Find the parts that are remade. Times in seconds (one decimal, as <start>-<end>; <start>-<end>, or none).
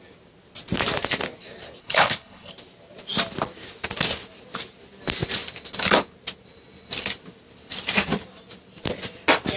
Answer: 1.8-2.5